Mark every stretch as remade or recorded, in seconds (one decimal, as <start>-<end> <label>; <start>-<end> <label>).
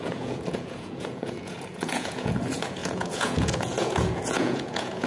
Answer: 0.0-5.1 remade